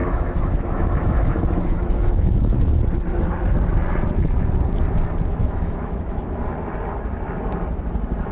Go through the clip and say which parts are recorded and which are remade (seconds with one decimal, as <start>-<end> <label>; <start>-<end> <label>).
0.0-2.6 remade; 2.6-5.4 recorded; 5.4-6.2 remade; 6.2-8.3 recorded